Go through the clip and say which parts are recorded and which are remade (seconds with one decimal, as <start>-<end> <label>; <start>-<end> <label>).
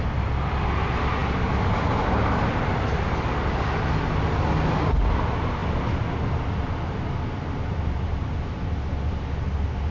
0.0-9.9 recorded